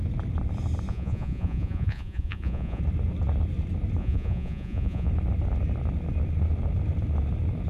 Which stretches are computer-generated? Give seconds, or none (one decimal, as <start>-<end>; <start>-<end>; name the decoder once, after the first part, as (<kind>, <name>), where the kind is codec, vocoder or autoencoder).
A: 0.9-2.8 (vocoder, Vocos); 4.0-5.1